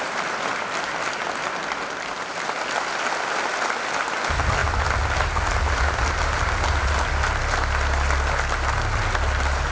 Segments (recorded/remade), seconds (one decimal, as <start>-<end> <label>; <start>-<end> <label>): 0.0-9.7 recorded